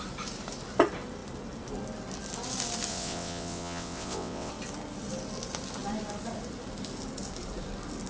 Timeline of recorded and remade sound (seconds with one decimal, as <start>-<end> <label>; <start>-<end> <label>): 0.0-2.9 recorded; 2.9-4.5 remade; 4.5-8.1 recorded